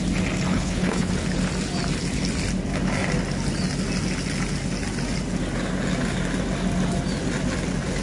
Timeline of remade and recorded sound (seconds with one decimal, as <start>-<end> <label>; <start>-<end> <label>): 0.0-0.5 recorded; 0.5-1.1 remade; 1.1-8.0 recorded